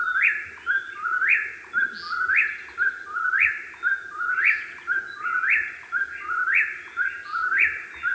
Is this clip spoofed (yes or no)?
no